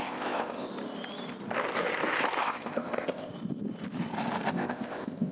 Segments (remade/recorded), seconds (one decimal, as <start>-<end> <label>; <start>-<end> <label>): 0.0-0.7 remade; 0.7-2.4 recorded; 2.4-3.3 remade; 3.3-4.5 recorded; 4.5-5.3 remade